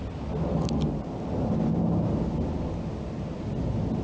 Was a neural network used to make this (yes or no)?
no